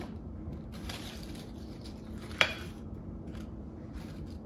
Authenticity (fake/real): fake